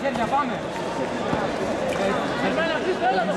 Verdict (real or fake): real